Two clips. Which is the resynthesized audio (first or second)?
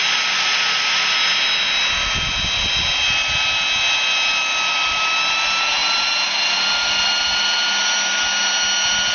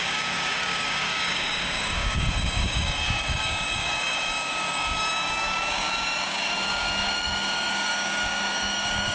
second